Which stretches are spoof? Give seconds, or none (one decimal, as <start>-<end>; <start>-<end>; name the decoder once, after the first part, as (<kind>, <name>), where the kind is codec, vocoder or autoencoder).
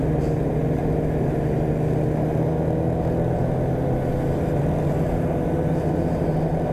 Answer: none